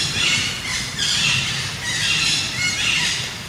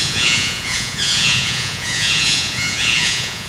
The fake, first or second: second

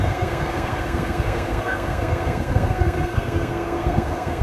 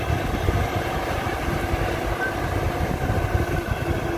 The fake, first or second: first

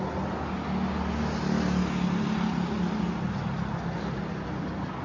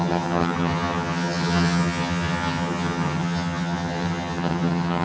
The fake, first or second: second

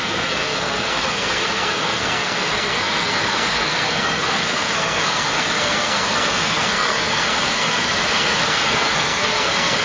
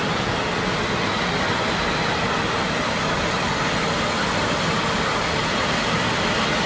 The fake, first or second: first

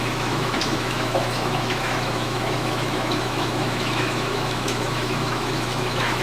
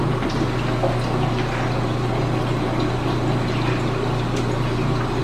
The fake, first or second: first